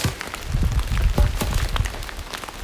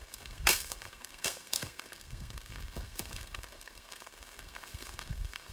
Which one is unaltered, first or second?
first